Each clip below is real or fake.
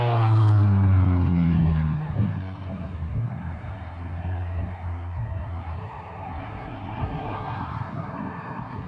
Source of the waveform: fake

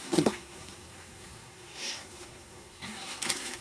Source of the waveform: fake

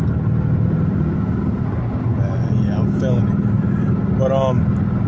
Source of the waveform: real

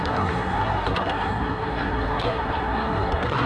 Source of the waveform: fake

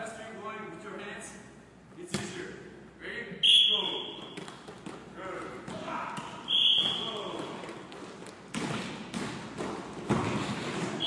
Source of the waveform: real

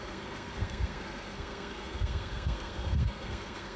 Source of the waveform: fake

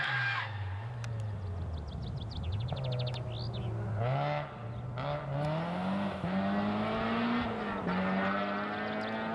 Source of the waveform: real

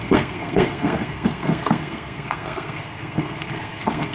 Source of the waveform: fake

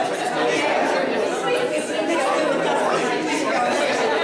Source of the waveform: real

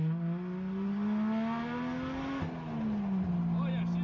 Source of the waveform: real